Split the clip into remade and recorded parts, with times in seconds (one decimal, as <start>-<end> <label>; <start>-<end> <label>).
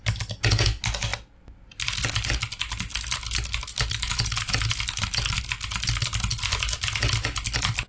0.0-7.9 recorded